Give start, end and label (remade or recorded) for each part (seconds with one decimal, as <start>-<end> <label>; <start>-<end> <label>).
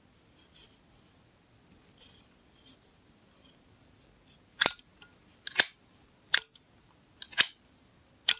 0.0-8.4 recorded